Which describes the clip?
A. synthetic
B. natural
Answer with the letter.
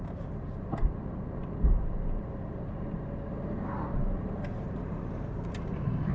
A